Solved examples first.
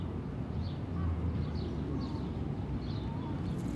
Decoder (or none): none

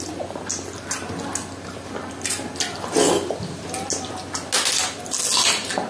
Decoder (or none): none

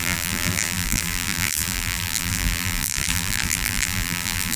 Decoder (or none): vocoder, BigVGAN v2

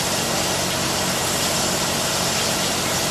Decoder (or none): none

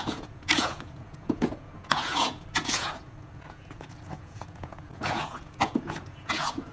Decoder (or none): vocoder, Vocos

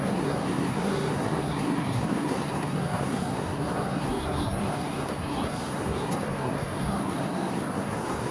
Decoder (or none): codec, SNAC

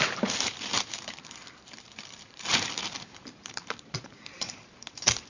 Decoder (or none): vocoder, BigVGAN v2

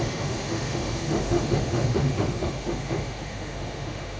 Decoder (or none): autoencoder, DAC-VAE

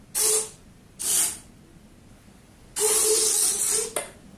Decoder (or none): none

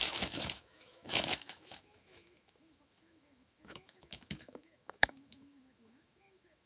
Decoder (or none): autoencoder, DAC-VAE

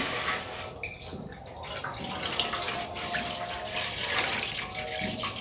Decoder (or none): none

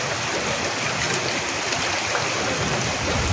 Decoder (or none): none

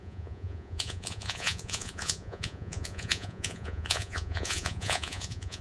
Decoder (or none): vocoder, Vocos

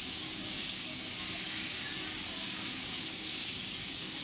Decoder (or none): codec, DAC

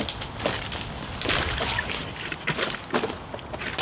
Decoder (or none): none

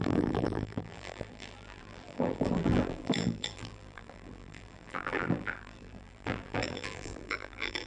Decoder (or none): vocoder, BigVGAN v2